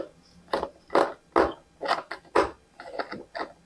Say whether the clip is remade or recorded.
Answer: recorded